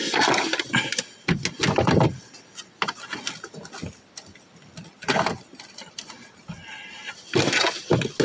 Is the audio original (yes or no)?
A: yes